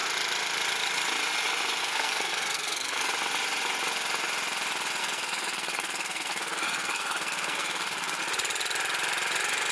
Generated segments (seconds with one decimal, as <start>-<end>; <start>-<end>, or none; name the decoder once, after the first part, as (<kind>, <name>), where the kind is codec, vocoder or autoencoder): 1.8-3.1 (codec, SNAC); 5.0-8.2